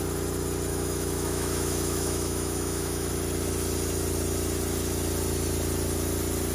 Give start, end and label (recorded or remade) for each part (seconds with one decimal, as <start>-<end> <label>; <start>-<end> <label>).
0.0-0.7 recorded; 0.7-3.1 remade; 3.1-6.5 recorded